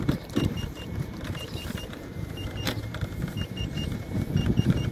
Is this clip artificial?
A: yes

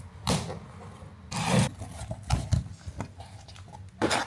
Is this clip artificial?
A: no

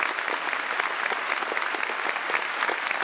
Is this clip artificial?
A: no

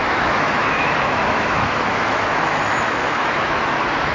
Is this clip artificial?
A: yes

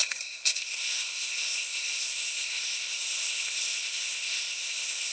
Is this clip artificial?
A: yes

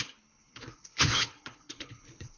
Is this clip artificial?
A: yes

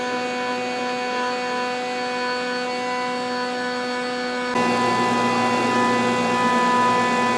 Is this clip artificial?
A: no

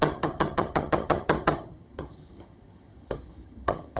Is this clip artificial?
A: yes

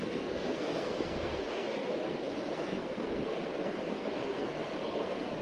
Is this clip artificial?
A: yes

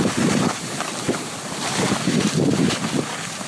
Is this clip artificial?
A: yes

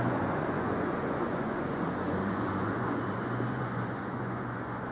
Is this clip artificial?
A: yes